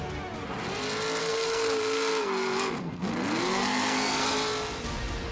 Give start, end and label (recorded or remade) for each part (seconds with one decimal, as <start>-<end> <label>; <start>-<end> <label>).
0.0-1.2 recorded; 1.2-4.3 remade; 4.3-5.3 recorded